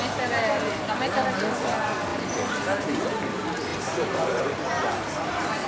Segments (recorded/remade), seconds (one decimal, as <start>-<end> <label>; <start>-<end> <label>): 0.0-2.1 remade; 2.1-3.0 recorded; 3.0-5.7 remade